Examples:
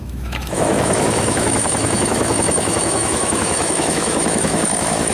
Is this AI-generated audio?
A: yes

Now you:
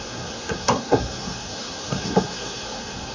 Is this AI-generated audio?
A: yes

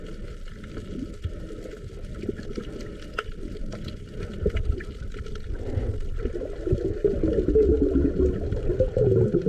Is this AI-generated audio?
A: no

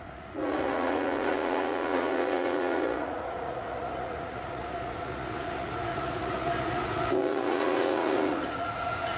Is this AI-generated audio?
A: yes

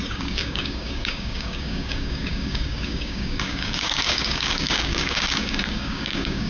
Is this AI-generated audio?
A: yes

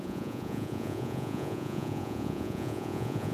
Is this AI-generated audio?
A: yes